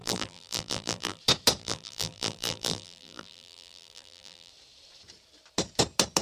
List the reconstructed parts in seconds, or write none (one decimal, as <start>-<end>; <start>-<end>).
0.0-1.2; 1.6-4.5